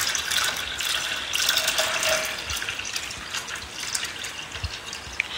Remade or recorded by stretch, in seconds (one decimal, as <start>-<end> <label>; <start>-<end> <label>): 0.0-5.4 recorded